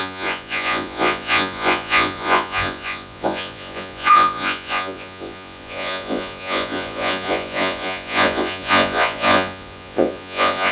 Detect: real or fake fake